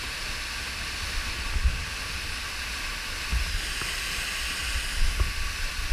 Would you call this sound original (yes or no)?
yes